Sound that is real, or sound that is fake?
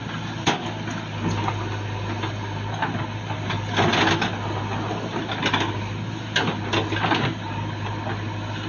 real